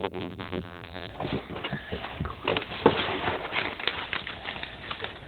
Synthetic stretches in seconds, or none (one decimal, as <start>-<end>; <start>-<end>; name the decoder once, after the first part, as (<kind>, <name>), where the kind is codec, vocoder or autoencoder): 0.0-1.1 (vocoder, BigVGAN v2)

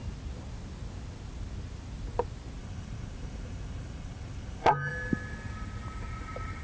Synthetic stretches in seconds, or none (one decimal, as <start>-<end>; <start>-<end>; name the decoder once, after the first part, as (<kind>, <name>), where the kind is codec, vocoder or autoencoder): 2.6-4.9 (vocoder, BigVGAN v2)

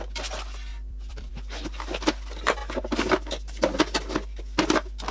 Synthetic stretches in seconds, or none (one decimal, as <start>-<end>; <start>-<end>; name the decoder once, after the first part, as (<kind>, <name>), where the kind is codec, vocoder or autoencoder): 0.7-1.3 (vocoder, BigVGAN v2)

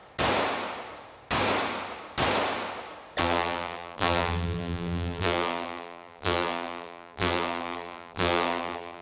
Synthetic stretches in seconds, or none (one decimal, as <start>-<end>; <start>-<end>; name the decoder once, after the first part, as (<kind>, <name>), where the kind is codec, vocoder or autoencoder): 3.2-9.0 (vocoder, BigVGAN v2)

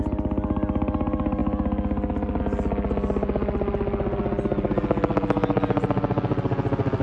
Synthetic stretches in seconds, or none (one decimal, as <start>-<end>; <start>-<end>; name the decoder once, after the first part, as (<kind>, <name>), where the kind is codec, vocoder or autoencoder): none

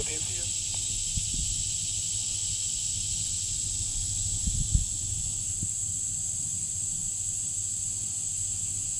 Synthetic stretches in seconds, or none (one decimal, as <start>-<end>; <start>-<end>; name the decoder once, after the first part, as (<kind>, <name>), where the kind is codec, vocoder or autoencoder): none

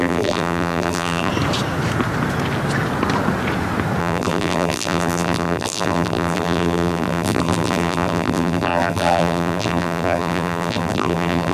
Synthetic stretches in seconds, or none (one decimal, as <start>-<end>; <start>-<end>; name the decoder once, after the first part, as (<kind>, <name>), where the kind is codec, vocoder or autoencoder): 0.0-1.3 (vocoder, BigVGAN v2); 4.0-11.5

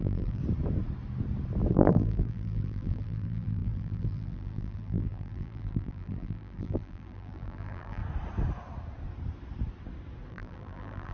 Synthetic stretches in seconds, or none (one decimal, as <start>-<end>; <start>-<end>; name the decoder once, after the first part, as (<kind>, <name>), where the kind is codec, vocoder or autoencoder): 0.0-0.4 (vocoder, BigVGAN v2); 1.7-8.0; 10.3-11.1